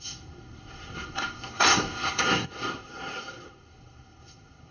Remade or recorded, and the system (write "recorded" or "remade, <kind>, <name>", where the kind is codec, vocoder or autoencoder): remade, codec, SNAC